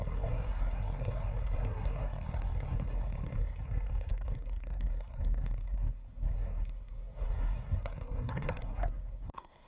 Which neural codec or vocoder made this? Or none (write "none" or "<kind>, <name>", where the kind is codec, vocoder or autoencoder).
codec, SNAC